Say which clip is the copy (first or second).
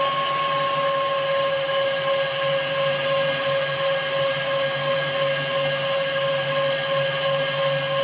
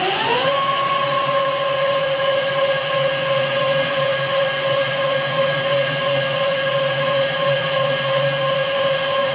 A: second